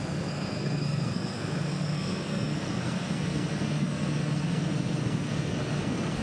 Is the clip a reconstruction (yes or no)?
yes